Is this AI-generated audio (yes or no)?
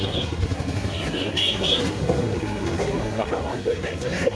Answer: yes